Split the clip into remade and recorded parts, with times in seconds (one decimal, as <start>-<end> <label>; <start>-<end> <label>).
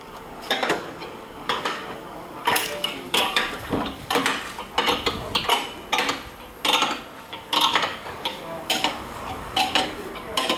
0.0-4.2 remade; 4.2-7.3 recorded; 7.3-10.6 remade